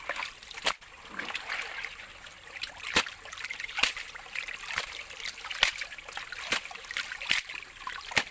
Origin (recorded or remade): recorded